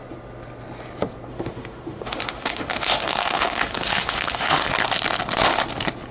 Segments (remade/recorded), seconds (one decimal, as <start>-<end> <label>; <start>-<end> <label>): 0.0-1.3 recorded; 1.3-4.7 remade; 4.7-6.1 recorded